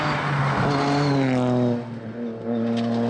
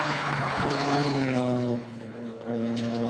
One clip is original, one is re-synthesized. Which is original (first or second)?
first